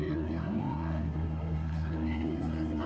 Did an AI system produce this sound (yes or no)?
yes